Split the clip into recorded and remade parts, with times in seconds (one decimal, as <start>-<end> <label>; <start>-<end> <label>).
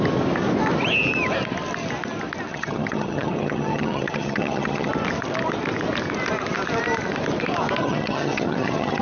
0.0-2.5 recorded; 2.5-4.9 remade; 4.9-7.8 recorded; 7.8-9.0 remade